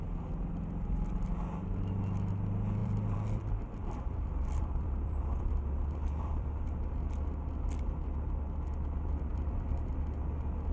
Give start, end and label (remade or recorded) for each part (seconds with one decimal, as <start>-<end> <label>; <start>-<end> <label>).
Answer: 0.0-2.8 recorded; 2.8-6.9 remade; 6.9-9.3 recorded; 9.3-9.9 remade; 9.9-10.7 recorded